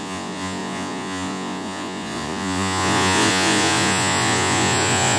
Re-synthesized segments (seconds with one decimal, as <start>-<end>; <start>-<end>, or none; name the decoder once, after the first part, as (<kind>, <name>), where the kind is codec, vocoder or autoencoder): 0.0-5.2 (vocoder, Vocos)